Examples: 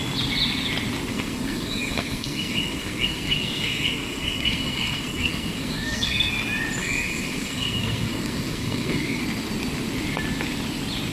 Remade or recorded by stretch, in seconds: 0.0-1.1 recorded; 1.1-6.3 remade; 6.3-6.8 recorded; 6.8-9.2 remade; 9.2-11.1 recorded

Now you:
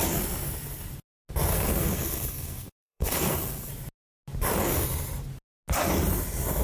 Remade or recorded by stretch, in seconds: 0.0-1.5 recorded; 1.5-3.7 remade; 3.7-6.6 recorded

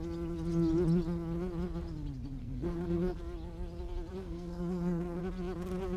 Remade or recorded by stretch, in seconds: 0.0-2.4 recorded; 2.4-3.2 remade; 3.2-4.2 recorded; 4.2-5.2 remade; 5.2-6.0 recorded

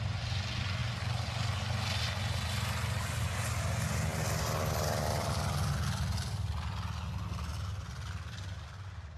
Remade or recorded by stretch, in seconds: 0.0-9.2 recorded

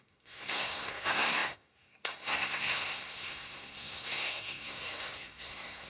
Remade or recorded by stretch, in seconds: 0.0-5.9 remade